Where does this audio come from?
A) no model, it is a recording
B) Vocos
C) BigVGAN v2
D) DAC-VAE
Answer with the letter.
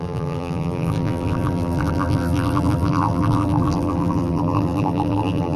C